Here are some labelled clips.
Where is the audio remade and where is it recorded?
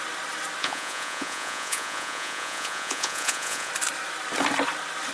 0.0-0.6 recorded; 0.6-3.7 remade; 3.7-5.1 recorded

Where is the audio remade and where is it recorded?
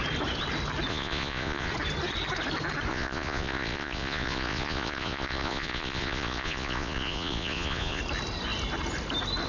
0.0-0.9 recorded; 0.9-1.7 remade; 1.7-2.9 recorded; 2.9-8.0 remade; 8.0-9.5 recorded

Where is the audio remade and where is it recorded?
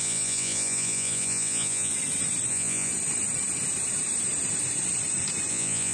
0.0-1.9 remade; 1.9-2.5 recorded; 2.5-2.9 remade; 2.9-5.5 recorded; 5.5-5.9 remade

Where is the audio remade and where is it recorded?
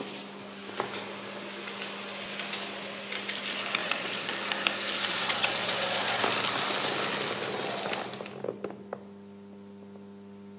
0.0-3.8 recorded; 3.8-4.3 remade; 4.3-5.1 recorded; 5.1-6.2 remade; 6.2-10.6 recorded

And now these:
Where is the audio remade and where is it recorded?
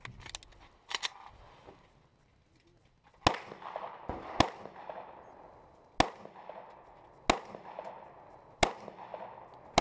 0.0-9.8 recorded